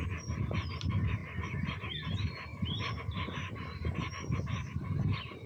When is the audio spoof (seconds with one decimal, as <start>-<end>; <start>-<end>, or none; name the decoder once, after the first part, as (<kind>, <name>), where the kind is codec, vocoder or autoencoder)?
0.0-1.2 (vocoder, BigVGAN v2); 1.8-5.5